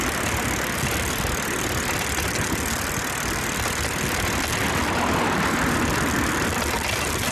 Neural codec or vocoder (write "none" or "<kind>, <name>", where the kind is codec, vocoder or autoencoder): none